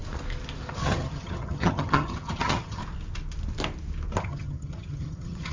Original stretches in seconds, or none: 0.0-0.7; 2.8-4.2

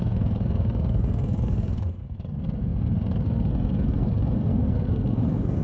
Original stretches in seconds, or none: none

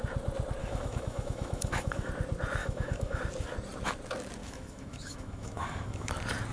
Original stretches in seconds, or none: 0.0-0.6; 2.1-2.6; 3.2-4.4; 6.1-6.5

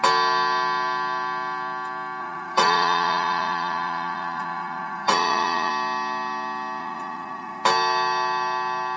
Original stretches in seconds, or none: 0.0-2.2; 5.7-6.8; 7.6-9.0

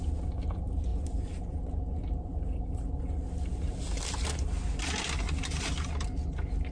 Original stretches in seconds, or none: 0.0-6.7

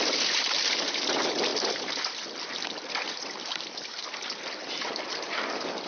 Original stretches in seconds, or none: 0.0-5.9